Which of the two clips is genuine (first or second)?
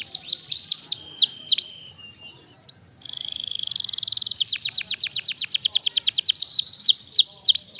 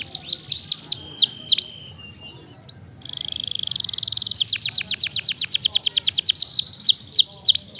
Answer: second